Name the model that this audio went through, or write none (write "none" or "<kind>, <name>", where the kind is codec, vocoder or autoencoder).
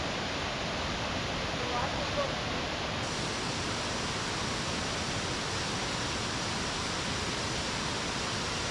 none